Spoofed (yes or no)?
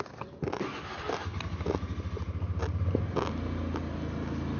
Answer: no